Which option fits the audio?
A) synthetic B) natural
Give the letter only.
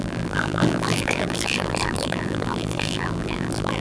A